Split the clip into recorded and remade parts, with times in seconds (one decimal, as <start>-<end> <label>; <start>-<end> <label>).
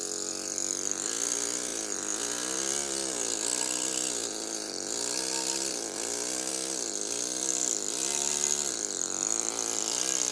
0.0-10.3 recorded